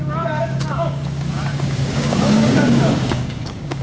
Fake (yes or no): yes